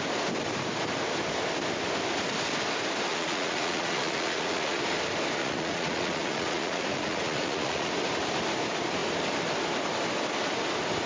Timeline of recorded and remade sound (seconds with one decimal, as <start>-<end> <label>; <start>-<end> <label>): 0.0-3.1 recorded; 3.1-4.8 remade; 4.8-5.4 recorded; 5.4-7.9 remade; 7.9-11.1 recorded